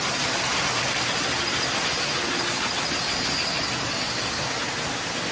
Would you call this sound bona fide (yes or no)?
yes